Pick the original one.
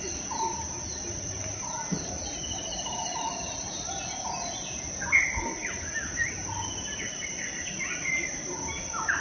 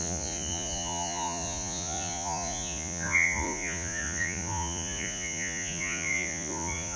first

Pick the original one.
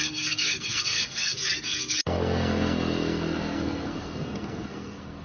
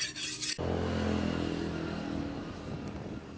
second